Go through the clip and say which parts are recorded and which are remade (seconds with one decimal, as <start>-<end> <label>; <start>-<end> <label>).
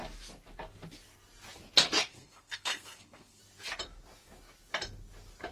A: 0.0-2.1 recorded; 2.1-3.4 remade; 3.4-5.5 recorded